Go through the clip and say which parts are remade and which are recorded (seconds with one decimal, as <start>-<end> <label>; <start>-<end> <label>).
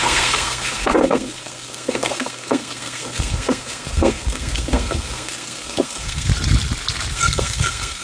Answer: 0.0-6.3 remade; 6.3-7.1 recorded; 7.1-8.0 remade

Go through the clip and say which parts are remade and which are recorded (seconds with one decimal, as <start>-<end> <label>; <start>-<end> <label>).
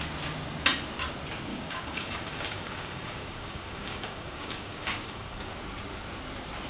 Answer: 0.0-1.5 recorded; 1.5-5.5 remade; 5.5-6.7 recorded